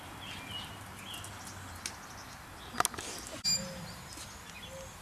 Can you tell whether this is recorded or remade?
recorded